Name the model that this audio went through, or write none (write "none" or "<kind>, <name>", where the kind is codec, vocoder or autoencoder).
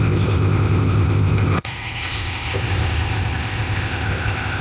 codec, ZipCodec